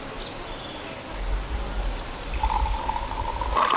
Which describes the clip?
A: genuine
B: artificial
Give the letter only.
A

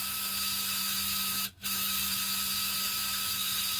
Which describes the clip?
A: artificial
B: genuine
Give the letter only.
A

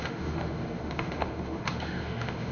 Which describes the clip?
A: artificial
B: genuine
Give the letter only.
A